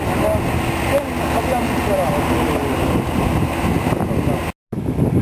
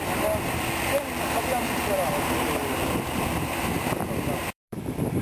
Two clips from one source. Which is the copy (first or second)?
second